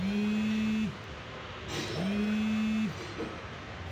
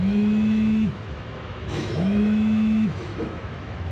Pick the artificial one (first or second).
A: second